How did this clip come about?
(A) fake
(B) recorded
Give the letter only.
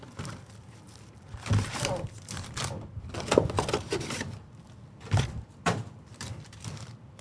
A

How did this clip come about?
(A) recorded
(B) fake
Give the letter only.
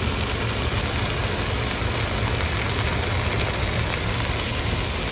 A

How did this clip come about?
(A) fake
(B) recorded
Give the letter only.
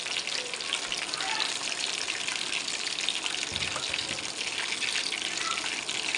B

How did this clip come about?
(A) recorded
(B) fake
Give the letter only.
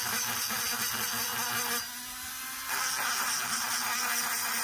A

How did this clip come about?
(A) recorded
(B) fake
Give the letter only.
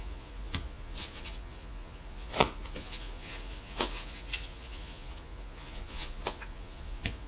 B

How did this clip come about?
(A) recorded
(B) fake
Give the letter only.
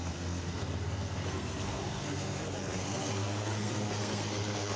B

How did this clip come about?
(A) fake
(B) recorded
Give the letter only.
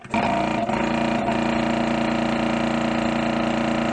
B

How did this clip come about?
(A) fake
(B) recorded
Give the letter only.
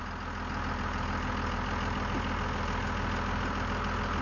B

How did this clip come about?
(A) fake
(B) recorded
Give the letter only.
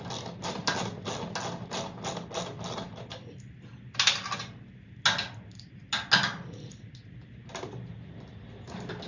B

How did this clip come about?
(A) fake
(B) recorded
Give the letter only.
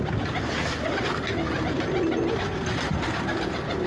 B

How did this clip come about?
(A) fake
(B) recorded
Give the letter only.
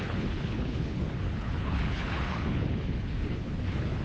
A